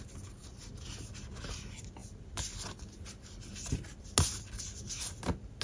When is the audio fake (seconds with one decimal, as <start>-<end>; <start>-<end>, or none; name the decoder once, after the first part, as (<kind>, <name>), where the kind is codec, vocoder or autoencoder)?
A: none